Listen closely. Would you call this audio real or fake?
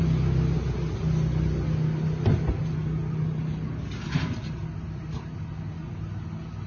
real